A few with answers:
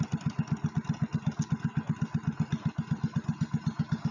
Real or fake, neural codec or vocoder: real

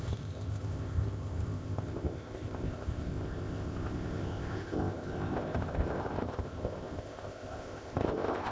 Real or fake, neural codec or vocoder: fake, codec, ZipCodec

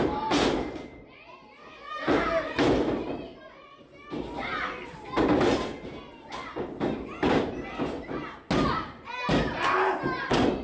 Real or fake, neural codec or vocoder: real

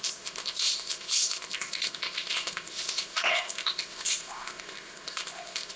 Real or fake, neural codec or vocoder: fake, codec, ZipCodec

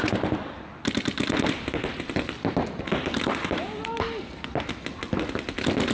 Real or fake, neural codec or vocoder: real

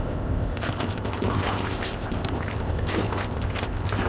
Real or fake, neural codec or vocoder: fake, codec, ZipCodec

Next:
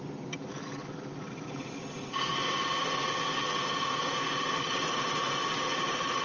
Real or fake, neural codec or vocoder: real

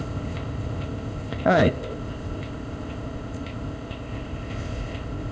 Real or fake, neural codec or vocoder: fake, codec, ZipCodec